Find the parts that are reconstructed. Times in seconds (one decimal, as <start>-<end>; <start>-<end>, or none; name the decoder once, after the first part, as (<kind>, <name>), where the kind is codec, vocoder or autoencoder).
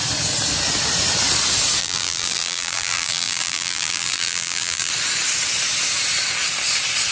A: 1.8-4.9 (vocoder, BigVGAN v2)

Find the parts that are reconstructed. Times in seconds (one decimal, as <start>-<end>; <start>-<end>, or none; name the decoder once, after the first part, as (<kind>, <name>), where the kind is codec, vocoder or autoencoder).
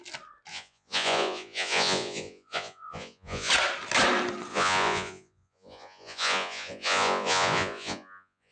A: 0.5-3.5 (vocoder, Vocos); 4.5-8.5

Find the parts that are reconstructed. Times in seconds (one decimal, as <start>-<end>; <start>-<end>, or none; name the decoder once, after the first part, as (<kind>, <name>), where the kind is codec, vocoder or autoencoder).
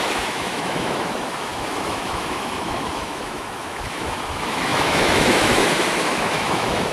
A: 0.0-6.9 (autoencoder, DAC-VAE)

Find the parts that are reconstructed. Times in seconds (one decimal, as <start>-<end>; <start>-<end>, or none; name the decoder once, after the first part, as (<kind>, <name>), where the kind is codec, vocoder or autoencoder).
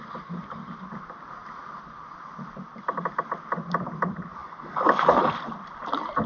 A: 4.4-5.2 (codec, DAC)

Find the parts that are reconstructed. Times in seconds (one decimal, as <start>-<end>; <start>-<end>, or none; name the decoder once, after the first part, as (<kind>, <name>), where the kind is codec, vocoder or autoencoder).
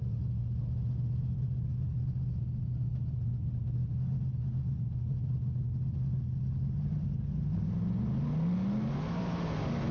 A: none